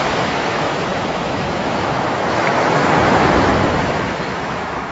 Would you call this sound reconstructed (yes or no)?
yes